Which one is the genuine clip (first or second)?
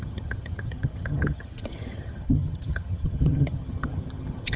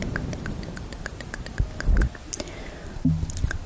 second